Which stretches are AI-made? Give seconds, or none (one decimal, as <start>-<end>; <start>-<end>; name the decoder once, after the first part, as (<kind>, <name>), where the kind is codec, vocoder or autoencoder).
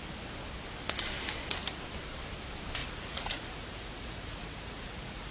2.8-5.3 (vocoder, Vocos)